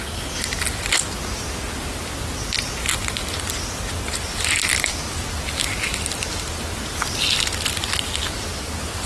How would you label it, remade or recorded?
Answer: recorded